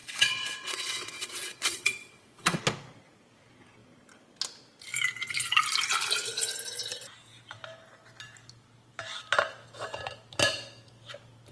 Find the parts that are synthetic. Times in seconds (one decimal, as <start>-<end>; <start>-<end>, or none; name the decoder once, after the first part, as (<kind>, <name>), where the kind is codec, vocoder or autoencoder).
0.0-2.6 (vocoder, WaveNeXt)